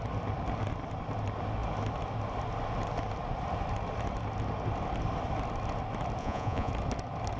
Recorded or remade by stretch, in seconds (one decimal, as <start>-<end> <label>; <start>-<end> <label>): 0.0-6.2 recorded; 6.2-6.7 remade; 6.7-7.4 recorded